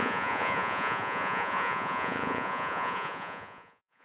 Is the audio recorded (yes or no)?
no